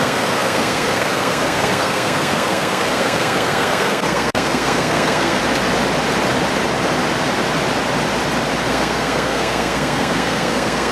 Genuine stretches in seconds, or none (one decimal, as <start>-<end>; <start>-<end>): 5.4-8.7